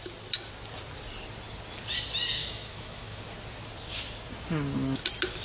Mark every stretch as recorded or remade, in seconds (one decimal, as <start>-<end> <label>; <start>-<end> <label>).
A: 0.0-2.4 recorded; 2.4-3.2 remade; 3.2-5.4 recorded